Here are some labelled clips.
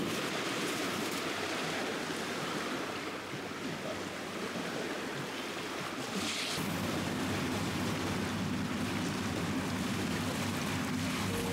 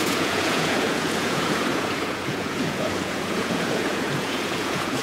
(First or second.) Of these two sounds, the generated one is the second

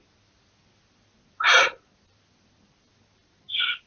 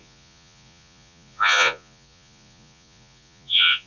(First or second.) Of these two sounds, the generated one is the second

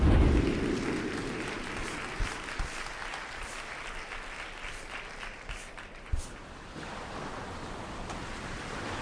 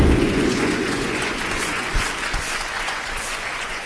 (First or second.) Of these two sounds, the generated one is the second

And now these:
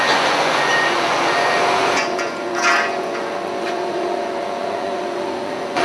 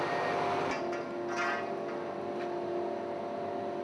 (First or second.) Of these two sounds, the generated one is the first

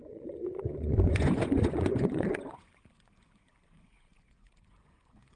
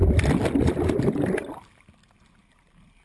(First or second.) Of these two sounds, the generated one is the first